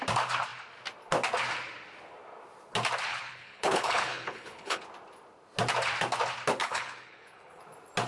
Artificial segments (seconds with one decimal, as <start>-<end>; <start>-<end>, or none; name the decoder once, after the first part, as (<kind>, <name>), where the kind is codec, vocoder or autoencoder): 3.1-4.8 (codec, HILCodec); 6.6-7.6